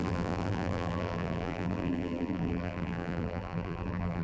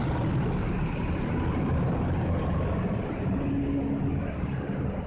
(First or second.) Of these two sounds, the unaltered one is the second